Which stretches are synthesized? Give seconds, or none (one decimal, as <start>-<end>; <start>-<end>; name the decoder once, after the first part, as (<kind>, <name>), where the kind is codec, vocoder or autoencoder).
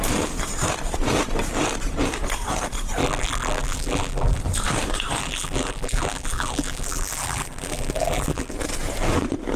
3.0-4.4 (vocoder, BigVGAN v2); 5.2-8.5